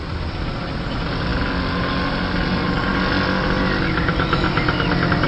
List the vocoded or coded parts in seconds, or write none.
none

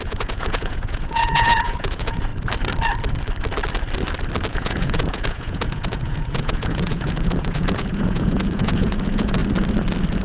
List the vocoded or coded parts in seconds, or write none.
0.0-2.3 (vocoder, Vocos); 4.5-9.4

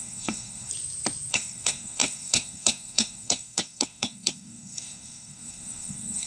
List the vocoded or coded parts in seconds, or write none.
0.0-0.7 (codec, SNAC); 1.3-6.3

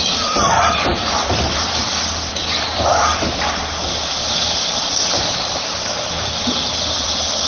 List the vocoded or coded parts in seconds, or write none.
0.0-7.5 (vocoder, BigVGAN v2)

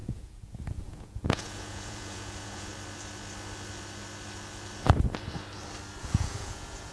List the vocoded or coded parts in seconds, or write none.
0.0-2.7 (vocoder, Vocos); 6.0-6.9

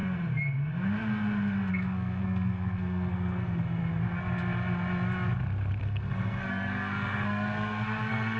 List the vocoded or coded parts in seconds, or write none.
1.7-3.8 (codec, SNAC); 5.8-8.4

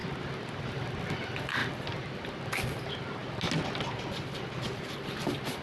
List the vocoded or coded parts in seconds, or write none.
none